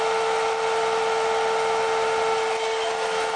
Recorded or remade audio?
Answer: recorded